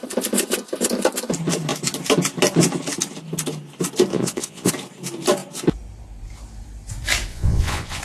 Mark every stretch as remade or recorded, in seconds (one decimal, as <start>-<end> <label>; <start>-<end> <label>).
0.0-4.1 recorded; 4.1-4.7 remade; 4.7-7.3 recorded; 7.3-8.0 remade